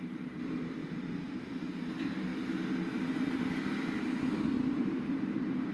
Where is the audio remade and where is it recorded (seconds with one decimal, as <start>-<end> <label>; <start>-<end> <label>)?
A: 0.0-2.3 remade; 2.3-4.7 recorded; 4.7-5.7 remade